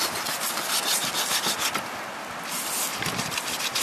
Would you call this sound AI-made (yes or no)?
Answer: no